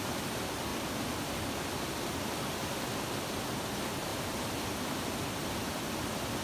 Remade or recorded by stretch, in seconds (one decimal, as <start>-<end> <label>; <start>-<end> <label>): 0.0-6.4 recorded